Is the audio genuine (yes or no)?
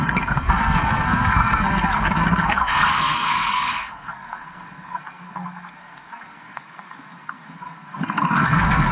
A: no